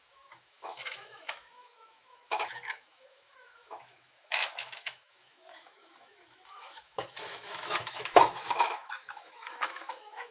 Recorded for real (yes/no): no